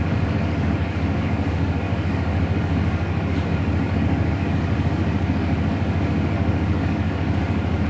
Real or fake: fake